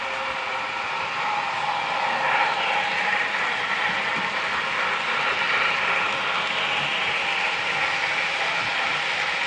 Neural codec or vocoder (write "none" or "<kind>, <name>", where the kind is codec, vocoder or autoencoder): none